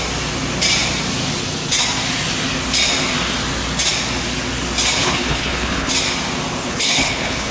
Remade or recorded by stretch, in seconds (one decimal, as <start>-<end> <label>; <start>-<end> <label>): 0.0-5.0 recorded; 5.0-5.9 remade; 5.9-6.6 recorded; 6.6-7.5 remade